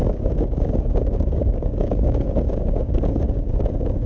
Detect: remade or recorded remade